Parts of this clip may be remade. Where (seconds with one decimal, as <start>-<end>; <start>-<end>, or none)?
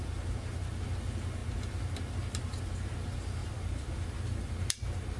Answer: 3.4-5.2